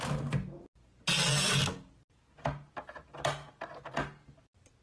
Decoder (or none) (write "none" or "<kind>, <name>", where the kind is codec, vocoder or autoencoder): none